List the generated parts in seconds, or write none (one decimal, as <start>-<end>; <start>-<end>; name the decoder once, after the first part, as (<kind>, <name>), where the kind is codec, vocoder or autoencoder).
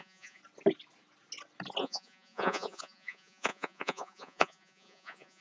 0.0-0.4 (vocoder, Vocos); 1.8-5.4